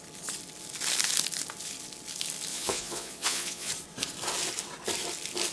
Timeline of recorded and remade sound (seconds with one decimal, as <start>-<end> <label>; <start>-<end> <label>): 0.0-2.5 recorded; 2.5-3.7 remade; 3.7-5.5 recorded